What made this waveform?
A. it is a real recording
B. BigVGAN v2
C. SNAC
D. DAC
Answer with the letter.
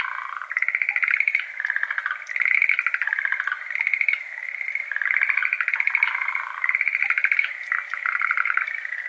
B